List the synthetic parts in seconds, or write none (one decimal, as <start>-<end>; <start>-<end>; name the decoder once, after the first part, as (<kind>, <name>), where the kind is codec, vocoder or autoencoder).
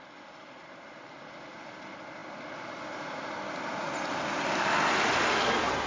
none